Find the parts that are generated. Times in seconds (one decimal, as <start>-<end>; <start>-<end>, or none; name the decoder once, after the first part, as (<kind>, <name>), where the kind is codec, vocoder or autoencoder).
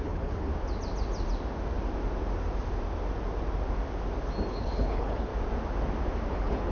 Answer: 0.0-0.5 (codec, HILCodec); 4.5-5.3; 6.3-6.7